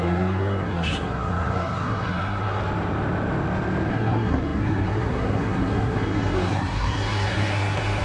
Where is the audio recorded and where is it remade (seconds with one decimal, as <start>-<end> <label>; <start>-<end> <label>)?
0.0-2.6 remade; 2.6-3.9 recorded; 3.9-8.0 remade